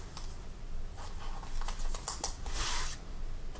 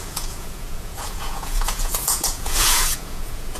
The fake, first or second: second